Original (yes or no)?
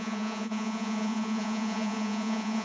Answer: no